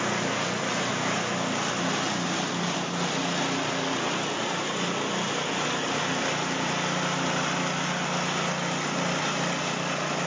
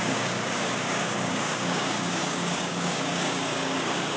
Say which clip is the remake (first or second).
second